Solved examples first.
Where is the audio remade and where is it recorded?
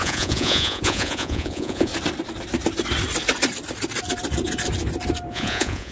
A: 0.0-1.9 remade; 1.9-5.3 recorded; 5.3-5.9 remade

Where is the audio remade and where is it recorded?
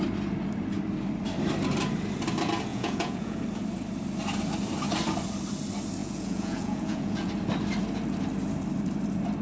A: 0.0-2.7 recorded; 2.7-3.4 remade; 3.4-6.0 recorded; 6.0-7.3 remade; 7.3-9.4 recorded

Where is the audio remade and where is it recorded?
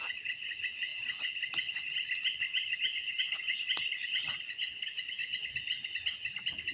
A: 0.0-6.7 recorded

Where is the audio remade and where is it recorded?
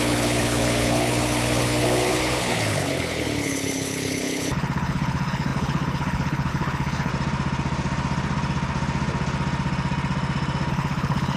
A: 0.0-7.1 remade; 7.1-10.7 recorded; 10.7-11.4 remade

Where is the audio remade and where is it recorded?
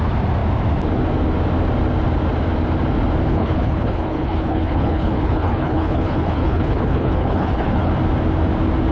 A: 0.0-3.3 recorded; 3.3-7.9 remade; 7.9-8.9 recorded